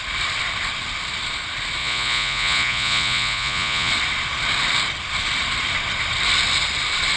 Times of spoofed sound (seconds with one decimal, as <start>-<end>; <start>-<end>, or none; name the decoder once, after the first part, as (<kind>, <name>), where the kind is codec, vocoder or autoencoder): 1.8-3.9 (vocoder, Vocos)